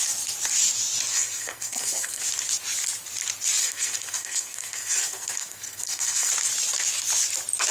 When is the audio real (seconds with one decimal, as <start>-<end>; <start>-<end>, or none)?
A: 0.0-1.1; 2.2-3.6; 6.3-7.7

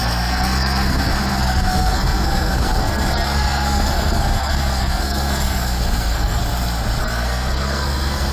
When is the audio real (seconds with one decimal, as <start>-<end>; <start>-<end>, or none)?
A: 6.4-7.0